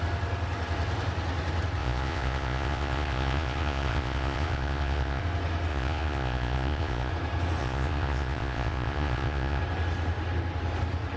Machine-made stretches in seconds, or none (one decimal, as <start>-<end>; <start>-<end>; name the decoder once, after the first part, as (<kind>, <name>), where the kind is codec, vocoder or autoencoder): 1.8-5.2 (vocoder, Vocos); 5.7-7.1; 7.6-9.6